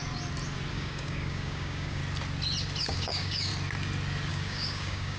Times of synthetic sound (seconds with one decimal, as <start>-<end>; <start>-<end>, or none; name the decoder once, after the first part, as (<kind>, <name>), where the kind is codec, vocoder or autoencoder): 0.7-2.0 (codec, DAC); 2.8-3.5; 4.3-5.2